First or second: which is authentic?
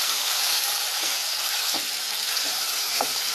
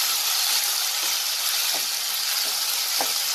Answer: second